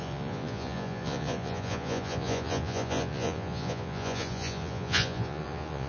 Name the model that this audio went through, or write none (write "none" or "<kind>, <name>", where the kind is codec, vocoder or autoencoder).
vocoder, Vocos